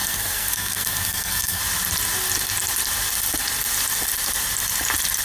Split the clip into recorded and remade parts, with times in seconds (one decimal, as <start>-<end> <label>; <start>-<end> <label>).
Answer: 0.0-1.6 remade; 1.6-5.2 recorded